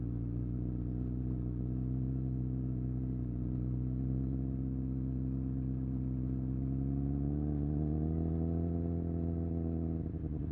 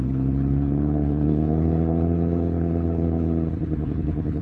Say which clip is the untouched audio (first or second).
first